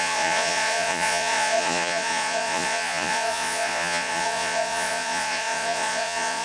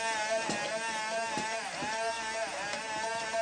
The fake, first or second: first